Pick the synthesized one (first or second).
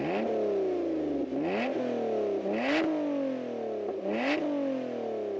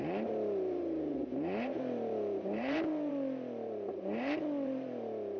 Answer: second